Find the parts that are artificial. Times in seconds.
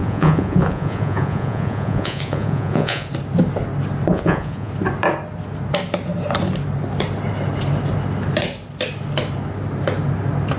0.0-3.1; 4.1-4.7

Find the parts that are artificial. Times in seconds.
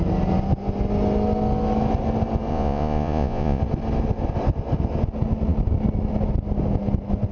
2.5-3.6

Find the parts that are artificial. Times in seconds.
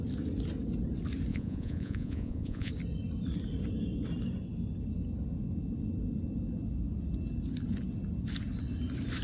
1.3-2.7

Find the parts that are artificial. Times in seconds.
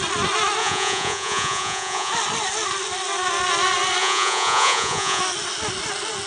0.6-2.1; 4.0-5.2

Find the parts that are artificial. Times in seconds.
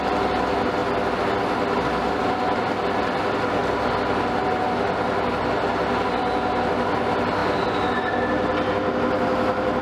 none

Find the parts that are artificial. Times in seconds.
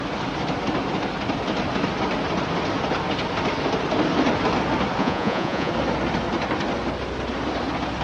5.0-5.7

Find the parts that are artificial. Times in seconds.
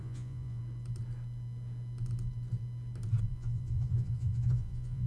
0.0-0.6; 3.3-5.1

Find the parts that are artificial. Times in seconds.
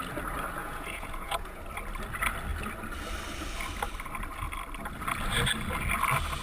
0.6-1.6